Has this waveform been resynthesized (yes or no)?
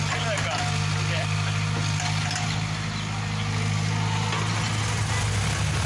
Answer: no